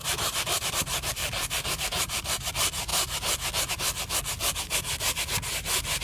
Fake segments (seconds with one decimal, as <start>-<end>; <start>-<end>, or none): 0.0-0.7; 1.2-2.5